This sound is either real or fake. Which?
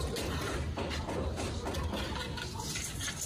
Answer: fake